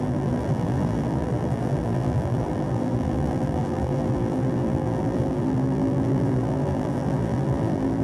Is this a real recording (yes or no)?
no